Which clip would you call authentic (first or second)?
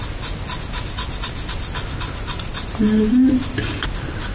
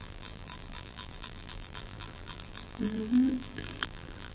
first